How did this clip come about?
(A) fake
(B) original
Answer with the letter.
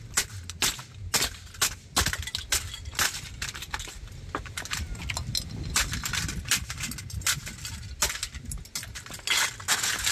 B